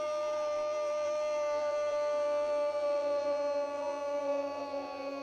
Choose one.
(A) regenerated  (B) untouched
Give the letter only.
A